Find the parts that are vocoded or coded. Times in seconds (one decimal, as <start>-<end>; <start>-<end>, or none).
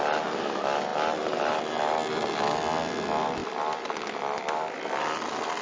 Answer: 0.9-1.6; 3.4-5.6